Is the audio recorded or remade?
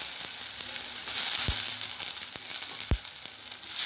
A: recorded